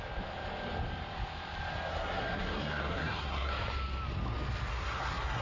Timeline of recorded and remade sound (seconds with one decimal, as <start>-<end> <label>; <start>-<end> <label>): 0.0-1.9 recorded; 1.9-3.5 remade; 3.5-4.7 recorded; 4.7-5.4 remade